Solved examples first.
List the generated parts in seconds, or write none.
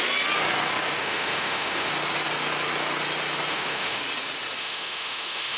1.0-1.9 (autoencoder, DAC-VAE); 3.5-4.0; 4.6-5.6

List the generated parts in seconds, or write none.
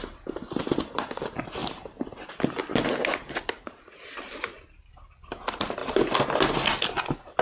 none